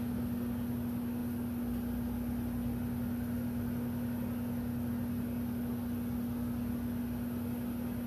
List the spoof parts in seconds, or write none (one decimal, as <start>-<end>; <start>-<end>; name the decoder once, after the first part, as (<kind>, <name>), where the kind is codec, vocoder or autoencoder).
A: none